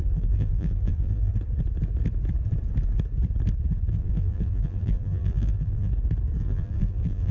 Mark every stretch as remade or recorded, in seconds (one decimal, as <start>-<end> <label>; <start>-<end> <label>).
0.0-1.3 remade; 1.3-3.9 recorded; 3.9-5.9 remade; 5.9-6.4 recorded; 6.4-7.3 remade